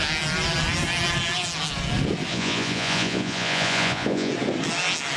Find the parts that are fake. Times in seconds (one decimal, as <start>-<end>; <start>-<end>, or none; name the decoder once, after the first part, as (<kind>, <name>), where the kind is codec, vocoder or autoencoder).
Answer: 2.3-4.3 (vocoder, Vocos)